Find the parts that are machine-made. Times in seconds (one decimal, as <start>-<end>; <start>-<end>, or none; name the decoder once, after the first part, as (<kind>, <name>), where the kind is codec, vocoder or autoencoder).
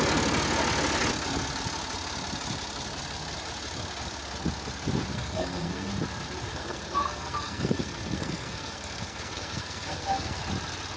5.1-5.9 (codec, SNAC); 6.5-10.4